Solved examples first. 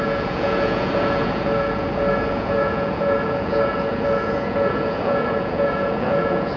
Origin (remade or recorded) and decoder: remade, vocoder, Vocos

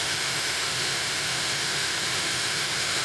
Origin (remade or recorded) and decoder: remade, autoencoder, DAC-VAE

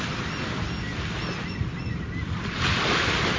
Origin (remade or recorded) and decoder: recorded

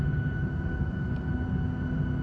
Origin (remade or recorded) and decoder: recorded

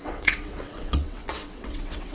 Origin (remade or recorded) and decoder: remade, vocoder, WaveNeXt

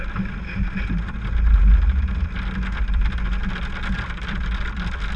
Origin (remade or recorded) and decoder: recorded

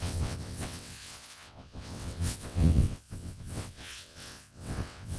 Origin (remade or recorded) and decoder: remade, vocoder, WaveNeXt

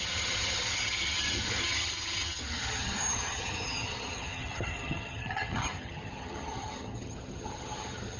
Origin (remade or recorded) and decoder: remade, vocoder, HiFi-GAN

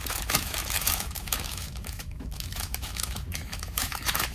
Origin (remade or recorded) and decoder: remade, autoencoder, DAC-VAE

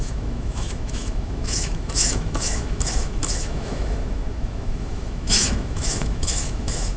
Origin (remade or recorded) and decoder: remade, autoencoder, DAC-VAE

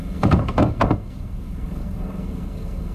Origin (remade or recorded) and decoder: remade, codec, SNAC